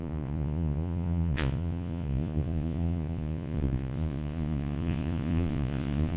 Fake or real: fake